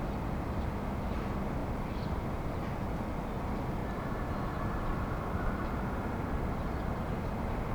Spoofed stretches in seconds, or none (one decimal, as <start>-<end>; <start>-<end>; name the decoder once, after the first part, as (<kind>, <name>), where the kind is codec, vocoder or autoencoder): 1.6-2.6 (vocoder, BigVGAN v2); 3.8-4.3